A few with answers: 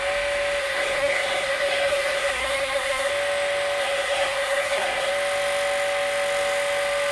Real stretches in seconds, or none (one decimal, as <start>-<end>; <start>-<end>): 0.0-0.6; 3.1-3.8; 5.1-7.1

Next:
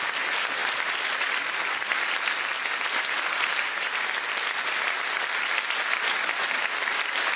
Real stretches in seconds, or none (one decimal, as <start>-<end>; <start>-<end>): 0.0-0.6; 1.5-3.5; 4.0-7.4

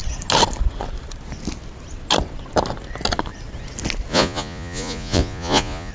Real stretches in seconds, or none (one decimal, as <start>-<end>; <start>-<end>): 0.0-4.1